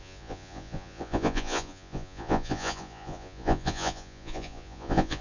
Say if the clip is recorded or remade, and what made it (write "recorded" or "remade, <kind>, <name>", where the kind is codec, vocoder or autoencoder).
remade, vocoder, Vocos